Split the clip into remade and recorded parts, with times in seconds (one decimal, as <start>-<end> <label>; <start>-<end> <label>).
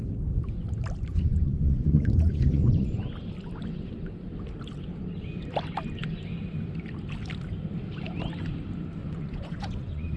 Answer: 0.0-1.1 recorded; 1.1-3.1 remade; 3.1-9.0 recorded; 9.0-10.2 remade